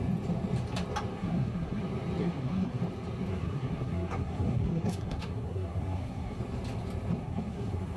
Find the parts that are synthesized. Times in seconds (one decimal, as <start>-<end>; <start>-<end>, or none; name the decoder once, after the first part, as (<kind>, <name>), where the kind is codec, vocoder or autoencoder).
1.1-1.8 (codec, SNAC); 2.2-2.8; 3.3-6.4; 7.2-8.0